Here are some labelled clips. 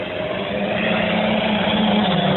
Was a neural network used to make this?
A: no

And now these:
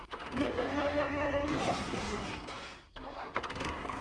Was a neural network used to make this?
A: yes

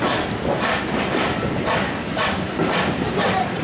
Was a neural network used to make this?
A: no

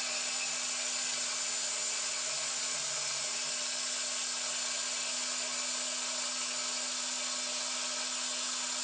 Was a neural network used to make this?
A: no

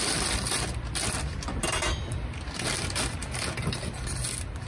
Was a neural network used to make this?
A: no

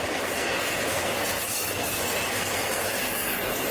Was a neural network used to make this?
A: yes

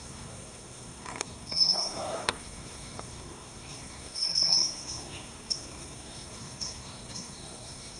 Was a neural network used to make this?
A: yes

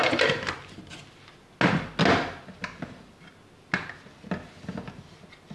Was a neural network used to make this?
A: no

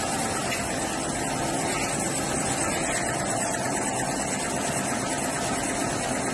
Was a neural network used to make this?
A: no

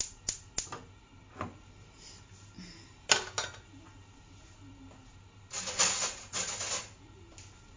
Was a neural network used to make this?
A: no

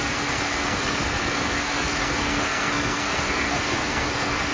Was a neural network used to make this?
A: yes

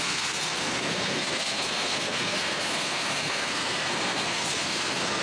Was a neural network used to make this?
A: yes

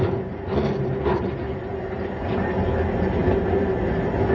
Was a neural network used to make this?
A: no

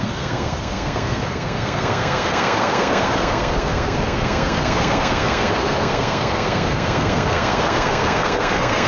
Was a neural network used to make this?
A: yes